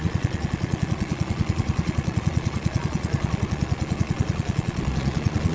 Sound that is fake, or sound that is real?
fake